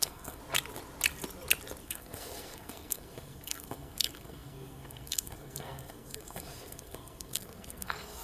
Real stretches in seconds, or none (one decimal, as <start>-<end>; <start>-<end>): 0.4-1.8